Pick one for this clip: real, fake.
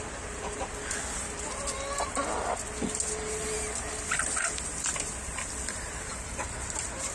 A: real